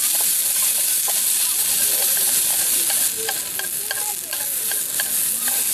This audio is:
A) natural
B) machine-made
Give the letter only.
A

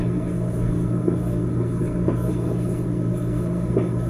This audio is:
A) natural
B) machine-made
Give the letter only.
B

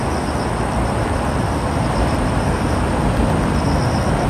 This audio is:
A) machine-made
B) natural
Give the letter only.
B